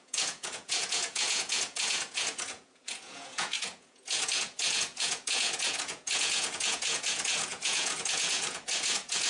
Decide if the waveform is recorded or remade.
remade